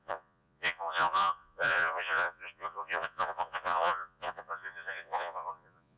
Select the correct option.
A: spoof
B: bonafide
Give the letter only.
A